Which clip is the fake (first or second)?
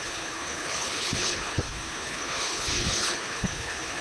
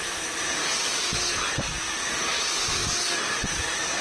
first